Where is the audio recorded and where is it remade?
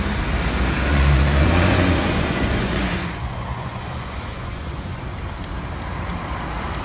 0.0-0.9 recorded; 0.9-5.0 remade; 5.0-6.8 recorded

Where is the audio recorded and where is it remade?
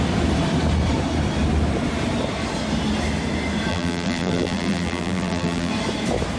0.0-3.7 recorded; 3.7-5.7 remade; 5.7-6.4 recorded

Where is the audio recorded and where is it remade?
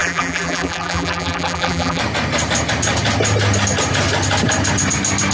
0.0-2.0 remade; 2.0-5.3 recorded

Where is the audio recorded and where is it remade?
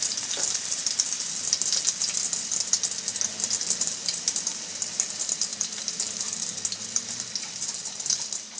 0.0-0.8 remade; 0.8-3.6 recorded; 3.6-8.6 remade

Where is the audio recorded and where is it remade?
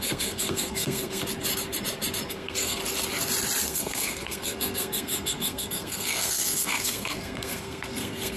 0.0-1.2 remade; 1.2-2.3 recorded; 2.3-2.8 remade; 2.8-3.6 recorded; 3.6-8.4 remade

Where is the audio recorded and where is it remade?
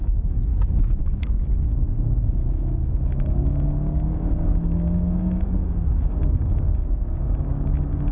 0.0-0.5 remade; 0.5-1.0 recorded; 1.0-8.1 remade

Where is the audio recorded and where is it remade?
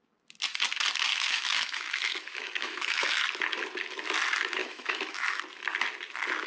0.0-1.1 recorded; 1.1-3.2 remade; 3.2-4.6 recorded; 4.6-5.4 remade; 5.4-6.5 recorded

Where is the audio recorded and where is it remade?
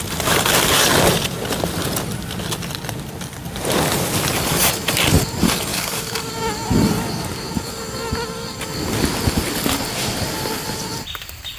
0.0-5.7 recorded; 5.7-6.3 remade; 6.3-11.6 recorded